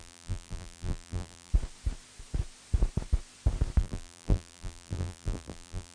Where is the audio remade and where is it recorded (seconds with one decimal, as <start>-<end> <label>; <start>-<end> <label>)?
0.0-1.5 remade; 1.5-3.8 recorded; 3.8-5.9 remade